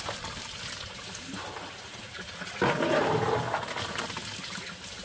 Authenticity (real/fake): real